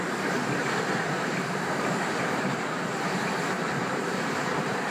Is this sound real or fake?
fake